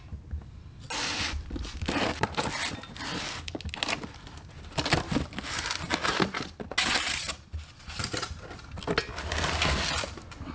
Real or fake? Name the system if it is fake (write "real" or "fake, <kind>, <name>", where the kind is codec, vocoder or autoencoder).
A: real